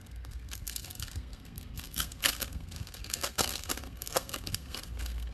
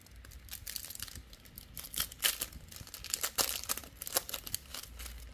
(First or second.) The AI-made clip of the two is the first